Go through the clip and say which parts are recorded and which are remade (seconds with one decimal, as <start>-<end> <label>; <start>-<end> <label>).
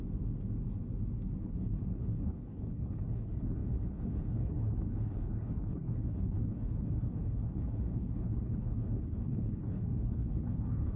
0.0-1.4 recorded; 1.4-11.0 remade